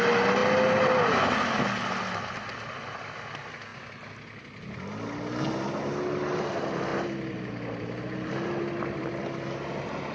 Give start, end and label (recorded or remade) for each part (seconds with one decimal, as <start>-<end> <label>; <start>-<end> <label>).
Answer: 0.0-6.9 recorded; 6.9-9.1 remade; 9.1-10.1 recorded